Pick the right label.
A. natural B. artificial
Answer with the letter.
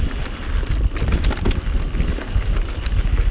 A